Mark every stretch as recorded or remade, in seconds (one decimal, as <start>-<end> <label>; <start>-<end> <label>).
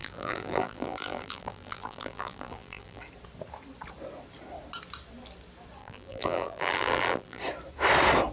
0.0-3.0 remade; 3.0-5.8 recorded; 5.8-7.4 remade; 7.4-8.3 recorded